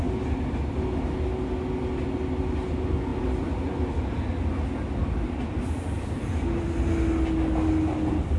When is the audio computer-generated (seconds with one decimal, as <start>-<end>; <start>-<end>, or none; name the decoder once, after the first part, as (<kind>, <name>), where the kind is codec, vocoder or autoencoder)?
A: 3.1-3.9 (vocoder, BigVGAN v2)